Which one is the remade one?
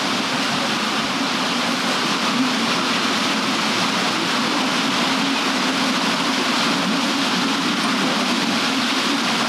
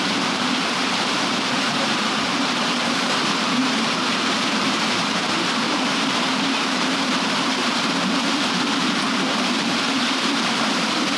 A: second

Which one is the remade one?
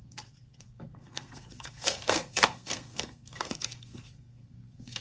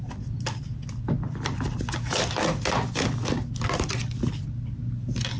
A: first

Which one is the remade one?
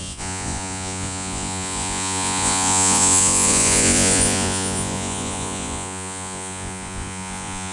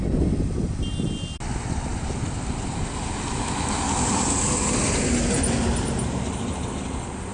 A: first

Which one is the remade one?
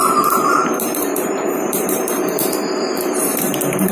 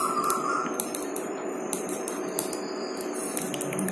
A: first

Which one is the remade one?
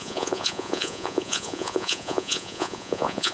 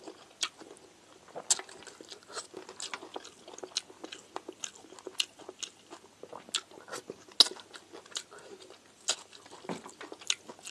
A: first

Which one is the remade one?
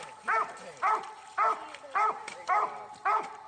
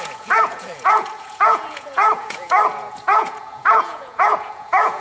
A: second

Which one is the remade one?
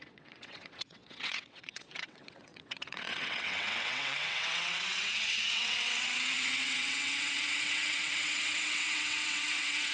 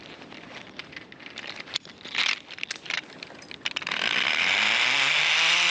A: first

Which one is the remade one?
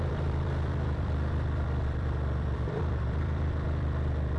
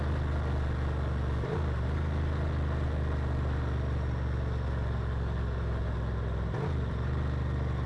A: first